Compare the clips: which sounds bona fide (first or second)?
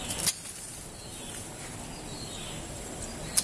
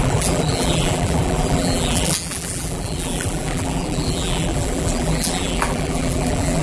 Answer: first